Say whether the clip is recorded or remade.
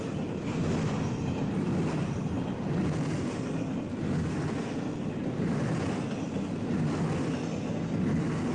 recorded